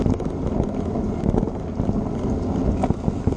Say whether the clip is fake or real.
real